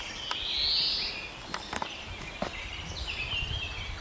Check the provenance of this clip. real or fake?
real